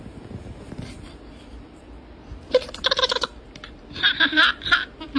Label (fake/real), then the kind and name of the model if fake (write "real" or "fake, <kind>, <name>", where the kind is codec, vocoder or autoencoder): fake, vocoder, BigVGAN v2